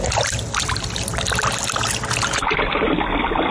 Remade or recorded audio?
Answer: recorded